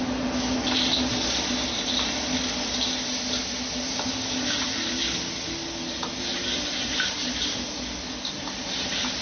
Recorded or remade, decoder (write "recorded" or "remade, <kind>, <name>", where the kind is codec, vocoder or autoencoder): recorded